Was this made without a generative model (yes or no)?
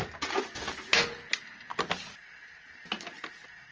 yes